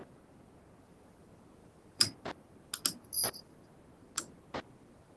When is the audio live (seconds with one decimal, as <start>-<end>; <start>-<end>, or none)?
0.0-1.6; 2.5-5.2